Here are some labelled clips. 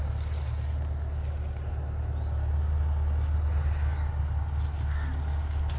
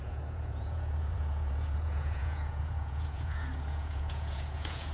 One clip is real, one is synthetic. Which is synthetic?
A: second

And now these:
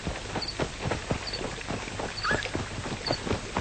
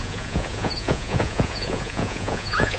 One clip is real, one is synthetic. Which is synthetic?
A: second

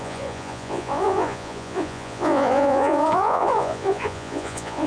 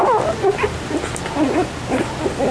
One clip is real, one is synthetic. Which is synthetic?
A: first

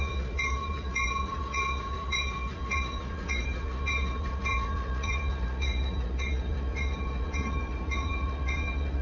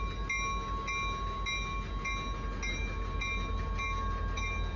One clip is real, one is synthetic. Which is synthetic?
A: first